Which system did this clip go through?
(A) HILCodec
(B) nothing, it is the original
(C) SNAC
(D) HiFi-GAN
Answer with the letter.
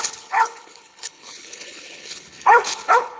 A